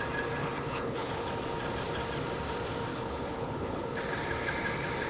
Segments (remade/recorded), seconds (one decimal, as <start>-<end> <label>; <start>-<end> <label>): 0.0-0.4 recorded; 0.4-1.3 remade; 1.3-2.9 recorded; 2.9-4.0 remade; 4.0-5.1 recorded